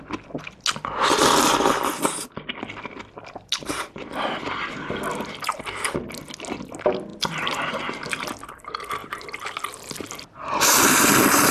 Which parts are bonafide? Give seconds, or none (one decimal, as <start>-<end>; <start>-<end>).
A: 0.0-7.1; 7.7-9.0; 11.1-11.5